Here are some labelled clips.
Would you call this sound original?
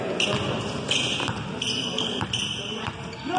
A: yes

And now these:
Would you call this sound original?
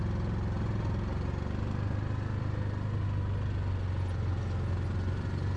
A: yes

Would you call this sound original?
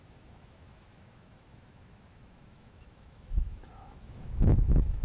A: no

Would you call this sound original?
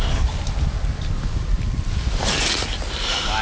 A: yes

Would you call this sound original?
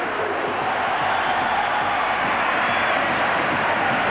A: yes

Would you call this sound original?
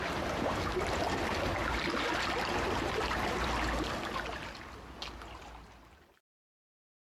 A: yes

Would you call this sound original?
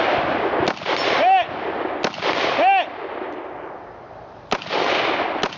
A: yes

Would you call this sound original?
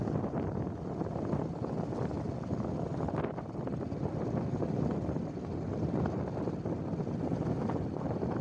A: yes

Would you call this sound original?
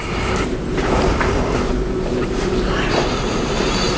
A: yes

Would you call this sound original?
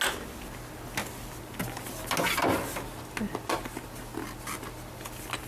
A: yes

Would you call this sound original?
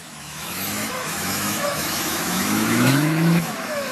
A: no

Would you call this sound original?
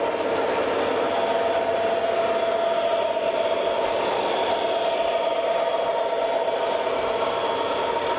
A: yes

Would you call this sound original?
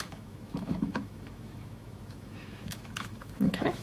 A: no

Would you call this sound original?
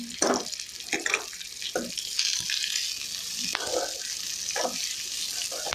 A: yes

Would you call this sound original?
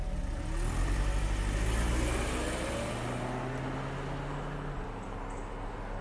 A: yes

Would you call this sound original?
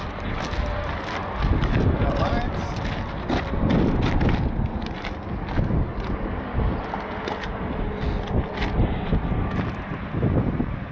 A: yes